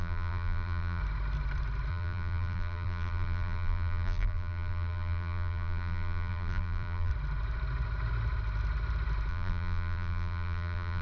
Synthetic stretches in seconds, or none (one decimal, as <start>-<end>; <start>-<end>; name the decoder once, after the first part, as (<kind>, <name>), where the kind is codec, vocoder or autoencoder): 0.0-1.0 (vocoder, BigVGAN v2); 1.9-7.1; 9.3-11.0